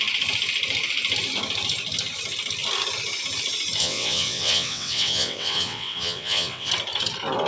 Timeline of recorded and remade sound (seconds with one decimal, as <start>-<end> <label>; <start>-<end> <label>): 0.0-3.8 recorded; 3.8-6.7 remade; 6.7-7.5 recorded